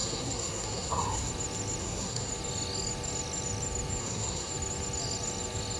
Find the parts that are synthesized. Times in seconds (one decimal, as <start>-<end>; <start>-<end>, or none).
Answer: 0.0-1.3; 1.8-2.3; 4.0-4.5